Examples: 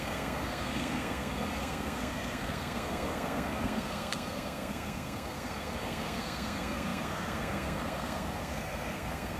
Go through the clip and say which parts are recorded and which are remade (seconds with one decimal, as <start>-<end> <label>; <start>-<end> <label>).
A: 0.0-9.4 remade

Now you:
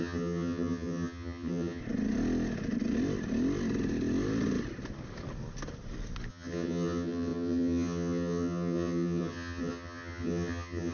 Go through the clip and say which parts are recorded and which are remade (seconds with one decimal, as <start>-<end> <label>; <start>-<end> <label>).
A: 0.0-1.8 remade; 1.8-6.3 recorded; 6.3-10.9 remade

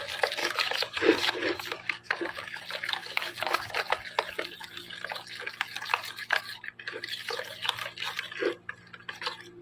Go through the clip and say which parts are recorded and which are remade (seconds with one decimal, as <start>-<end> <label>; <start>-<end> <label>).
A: 0.0-0.4 recorded; 0.4-2.6 remade; 2.6-3.0 recorded; 3.0-3.7 remade; 3.7-9.6 recorded

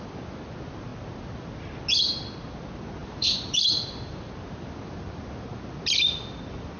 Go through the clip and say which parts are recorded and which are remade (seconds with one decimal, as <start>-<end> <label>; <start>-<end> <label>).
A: 0.0-3.0 recorded; 3.0-4.3 remade; 4.3-6.8 recorded